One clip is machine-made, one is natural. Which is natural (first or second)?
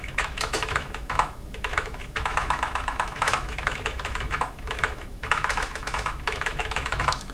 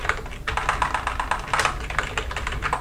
second